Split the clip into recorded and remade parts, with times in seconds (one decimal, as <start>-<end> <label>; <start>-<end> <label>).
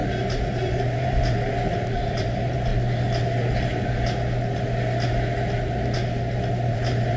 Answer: 0.0-2.7 remade; 2.7-6.7 recorded; 6.7-7.2 remade